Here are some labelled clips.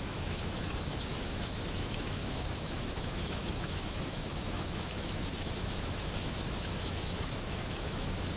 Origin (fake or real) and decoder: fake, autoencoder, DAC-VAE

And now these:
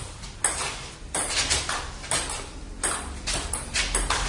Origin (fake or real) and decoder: real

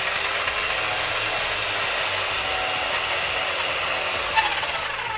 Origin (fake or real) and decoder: real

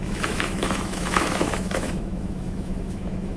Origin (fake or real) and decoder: fake, autoencoder, DAC-VAE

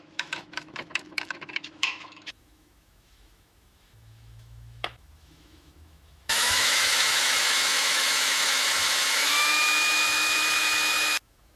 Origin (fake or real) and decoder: fake, autoencoder, DAC-VAE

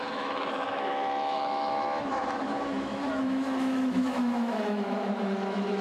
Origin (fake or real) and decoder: fake, autoencoder, DAC-VAE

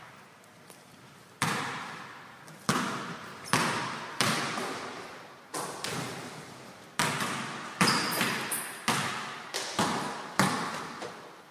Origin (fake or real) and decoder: real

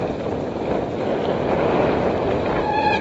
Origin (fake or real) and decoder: real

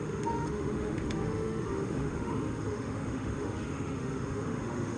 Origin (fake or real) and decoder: fake, autoencoder, DAC-VAE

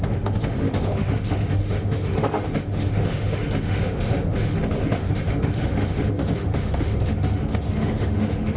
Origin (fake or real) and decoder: fake, autoencoder, DAC-VAE